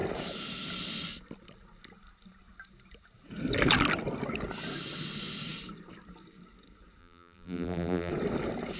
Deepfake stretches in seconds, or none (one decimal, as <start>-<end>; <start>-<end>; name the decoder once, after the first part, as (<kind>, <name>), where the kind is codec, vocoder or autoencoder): 7.0-8.1 (vocoder, BigVGAN v2)